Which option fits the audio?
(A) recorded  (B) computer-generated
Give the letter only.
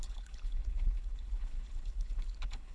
B